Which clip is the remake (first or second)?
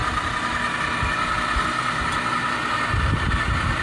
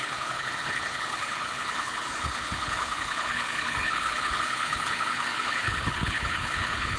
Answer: second